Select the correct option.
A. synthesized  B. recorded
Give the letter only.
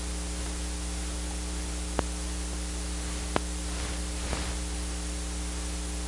B